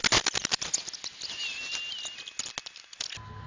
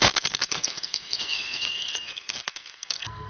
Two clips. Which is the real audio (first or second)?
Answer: first